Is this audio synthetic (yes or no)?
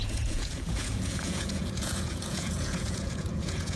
yes